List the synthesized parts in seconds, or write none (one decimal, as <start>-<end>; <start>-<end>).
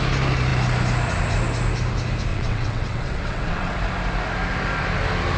2.3-3.7